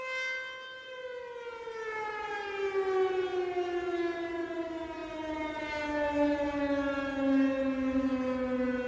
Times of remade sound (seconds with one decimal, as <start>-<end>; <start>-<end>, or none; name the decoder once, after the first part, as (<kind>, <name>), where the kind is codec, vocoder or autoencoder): 1.5-2.6 (vocoder, BigVGAN v2); 5.0-6.6